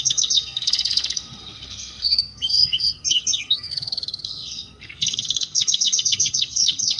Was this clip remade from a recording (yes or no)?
yes